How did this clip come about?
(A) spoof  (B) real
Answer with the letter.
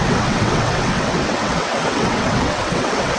A